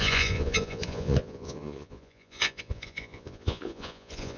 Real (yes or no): no